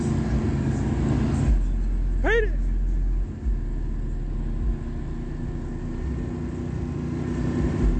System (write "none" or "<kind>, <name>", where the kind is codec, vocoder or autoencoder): none